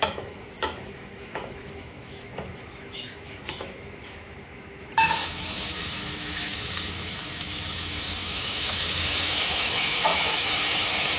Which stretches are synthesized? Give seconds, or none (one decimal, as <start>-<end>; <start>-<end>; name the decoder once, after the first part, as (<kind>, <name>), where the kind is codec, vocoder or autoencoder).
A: 0.0-11.2 (autoencoder, DAC-VAE)